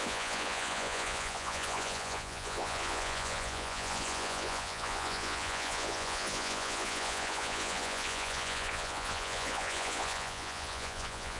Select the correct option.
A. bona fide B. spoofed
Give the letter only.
B